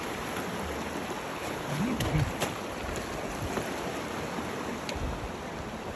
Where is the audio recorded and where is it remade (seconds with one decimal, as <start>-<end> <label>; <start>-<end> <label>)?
0.0-1.3 recorded; 1.3-1.8 remade; 1.8-6.0 recorded